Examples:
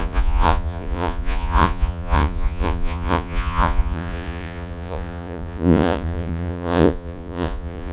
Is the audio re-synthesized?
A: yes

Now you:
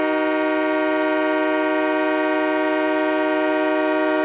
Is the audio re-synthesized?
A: no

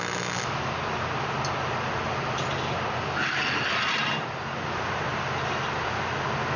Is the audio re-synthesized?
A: no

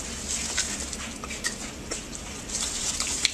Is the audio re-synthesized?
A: no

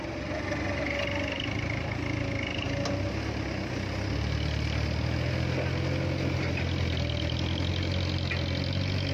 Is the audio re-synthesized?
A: no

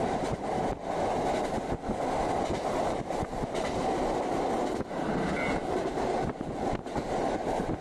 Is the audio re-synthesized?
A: no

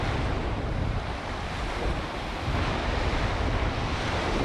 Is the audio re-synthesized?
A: no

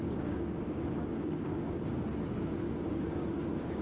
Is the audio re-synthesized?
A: yes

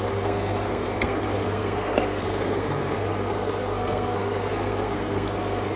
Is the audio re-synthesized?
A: yes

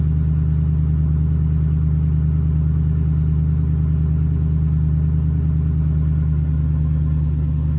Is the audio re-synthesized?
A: no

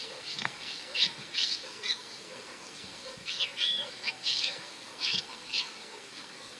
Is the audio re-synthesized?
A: yes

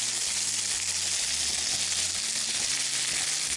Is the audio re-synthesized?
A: no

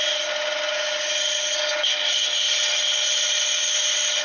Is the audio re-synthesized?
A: no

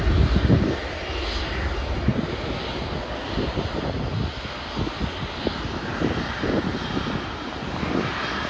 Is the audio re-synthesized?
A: no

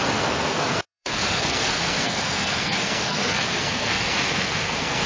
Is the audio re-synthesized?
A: yes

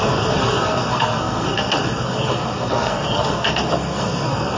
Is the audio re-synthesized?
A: yes